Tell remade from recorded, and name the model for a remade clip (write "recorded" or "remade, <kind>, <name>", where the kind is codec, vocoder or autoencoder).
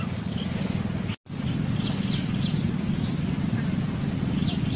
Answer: recorded